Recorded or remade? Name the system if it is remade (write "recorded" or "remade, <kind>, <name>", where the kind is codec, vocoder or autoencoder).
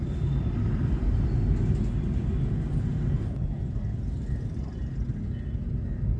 recorded